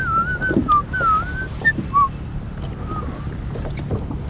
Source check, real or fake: real